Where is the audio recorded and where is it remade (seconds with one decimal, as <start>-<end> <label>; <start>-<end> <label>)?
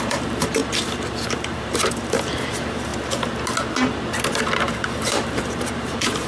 0.0-2.9 remade; 2.9-4.6 recorded; 4.6-6.3 remade